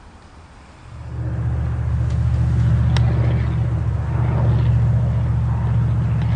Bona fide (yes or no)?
yes